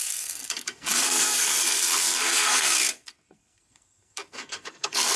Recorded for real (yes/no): no